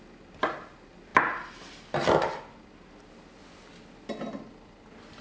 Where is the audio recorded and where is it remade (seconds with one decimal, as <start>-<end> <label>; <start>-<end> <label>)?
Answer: 0.0-5.2 recorded